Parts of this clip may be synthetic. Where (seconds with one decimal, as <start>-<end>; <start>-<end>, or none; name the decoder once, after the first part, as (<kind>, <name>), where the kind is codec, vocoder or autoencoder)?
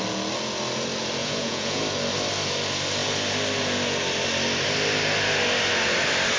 1.2-1.8 (vocoder, Vocos)